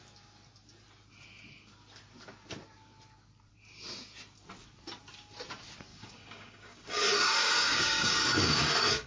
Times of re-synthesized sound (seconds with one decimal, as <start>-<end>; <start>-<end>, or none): 5.9-9.1